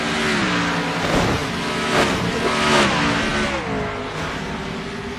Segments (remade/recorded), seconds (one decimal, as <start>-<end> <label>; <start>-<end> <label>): 0.0-5.2 recorded